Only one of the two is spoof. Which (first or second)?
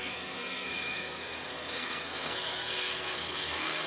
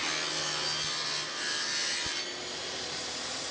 first